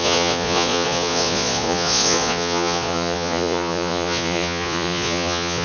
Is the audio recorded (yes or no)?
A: no